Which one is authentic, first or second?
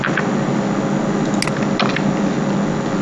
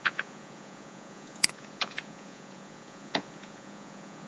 first